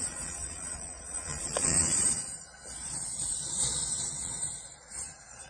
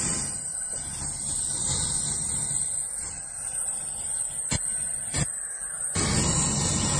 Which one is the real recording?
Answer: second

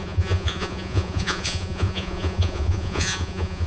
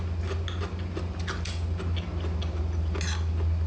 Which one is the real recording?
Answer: second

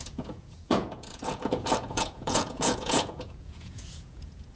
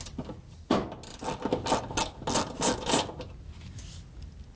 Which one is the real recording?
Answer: second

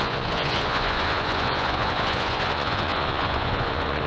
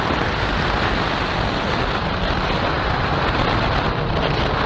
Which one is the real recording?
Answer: second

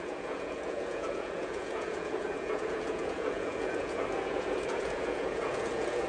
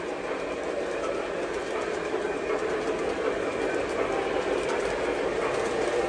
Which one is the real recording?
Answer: second